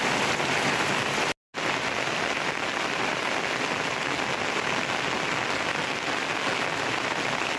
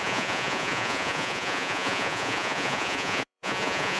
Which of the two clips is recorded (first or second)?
first